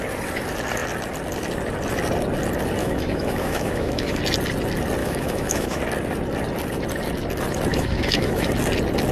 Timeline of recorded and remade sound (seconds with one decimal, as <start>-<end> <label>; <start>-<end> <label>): 0.0-2.8 recorded; 2.8-4.2 remade; 4.2-5.0 recorded; 5.0-5.8 remade; 5.8-7.7 recorded; 7.7-8.5 remade; 8.5-9.1 recorded